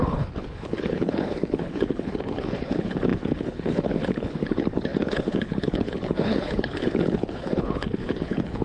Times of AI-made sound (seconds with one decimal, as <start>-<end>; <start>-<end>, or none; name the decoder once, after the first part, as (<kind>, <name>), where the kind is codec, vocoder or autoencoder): 0.0-8.6 (codec, HILCodec)